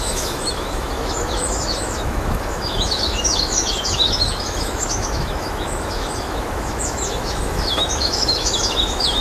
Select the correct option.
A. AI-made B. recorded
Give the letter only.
A